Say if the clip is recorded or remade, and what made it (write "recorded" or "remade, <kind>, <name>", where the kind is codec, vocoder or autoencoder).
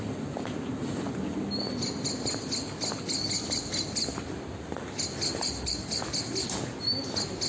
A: recorded